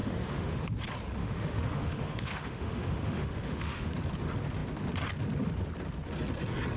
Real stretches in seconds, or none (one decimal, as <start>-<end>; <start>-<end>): 0.6-1.2; 3.9-6.8